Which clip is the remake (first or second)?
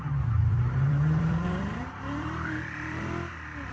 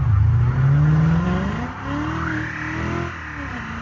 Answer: first